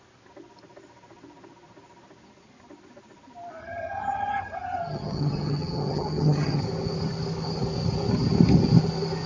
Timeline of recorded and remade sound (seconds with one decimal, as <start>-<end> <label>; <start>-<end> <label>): 0.0-3.6 recorded; 3.6-6.6 remade; 6.6-9.3 recorded